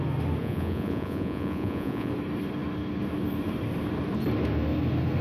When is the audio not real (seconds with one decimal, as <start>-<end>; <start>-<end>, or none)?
0.4-2.1